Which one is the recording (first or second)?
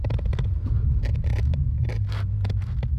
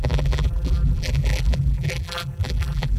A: first